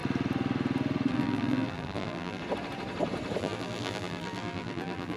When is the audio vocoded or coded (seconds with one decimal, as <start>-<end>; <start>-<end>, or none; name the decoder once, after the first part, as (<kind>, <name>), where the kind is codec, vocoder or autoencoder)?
1.1-2.4 (vocoder, BigVGAN v2); 3.4-5.2